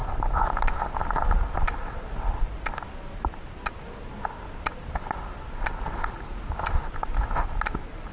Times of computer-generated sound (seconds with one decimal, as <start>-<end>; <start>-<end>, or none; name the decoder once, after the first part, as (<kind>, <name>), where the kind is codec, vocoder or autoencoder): none